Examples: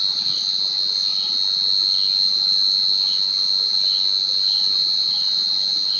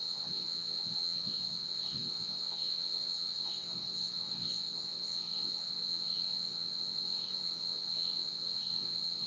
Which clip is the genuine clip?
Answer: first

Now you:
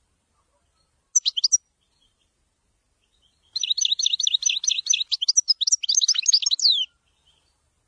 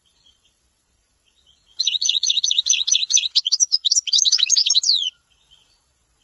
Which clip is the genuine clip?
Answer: first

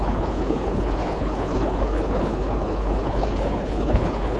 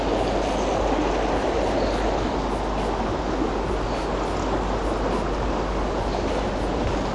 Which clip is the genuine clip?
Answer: second